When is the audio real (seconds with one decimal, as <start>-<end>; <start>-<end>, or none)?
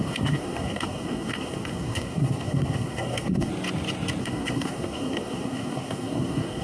3.5-4.2